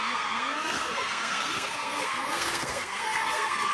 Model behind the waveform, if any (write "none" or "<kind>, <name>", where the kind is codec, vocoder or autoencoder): codec, SNAC